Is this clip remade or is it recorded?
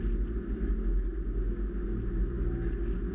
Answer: recorded